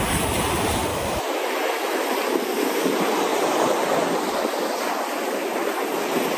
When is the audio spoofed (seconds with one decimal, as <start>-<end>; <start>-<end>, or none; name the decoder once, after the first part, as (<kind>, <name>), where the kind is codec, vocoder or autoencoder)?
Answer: 0.9-2.1 (autoencoder, DAC-VAE)

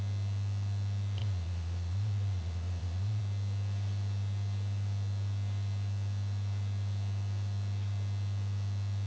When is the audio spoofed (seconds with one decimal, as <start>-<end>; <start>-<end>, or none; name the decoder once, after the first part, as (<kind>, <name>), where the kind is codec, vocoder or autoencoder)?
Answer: 1.2-3.2 (vocoder, Vocos)

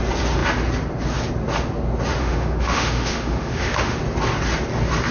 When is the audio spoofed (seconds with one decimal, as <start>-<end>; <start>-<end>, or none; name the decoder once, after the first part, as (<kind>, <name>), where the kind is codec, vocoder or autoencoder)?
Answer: 2.2-4.0 (autoencoder, DAC-VAE)